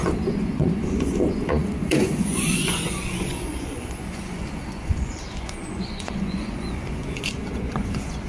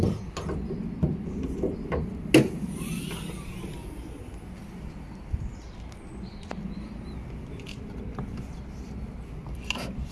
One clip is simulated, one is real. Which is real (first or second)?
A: second